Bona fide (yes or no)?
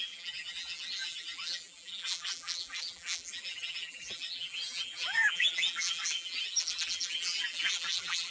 no